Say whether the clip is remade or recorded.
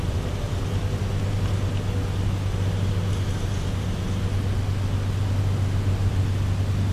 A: recorded